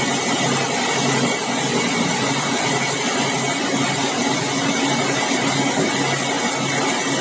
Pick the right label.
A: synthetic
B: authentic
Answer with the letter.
B